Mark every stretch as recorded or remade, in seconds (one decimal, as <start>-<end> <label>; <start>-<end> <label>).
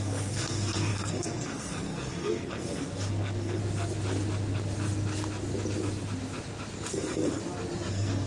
0.0-3.6 remade; 3.6-6.9 recorded; 6.9-7.4 remade; 7.4-7.9 recorded; 7.9-8.3 remade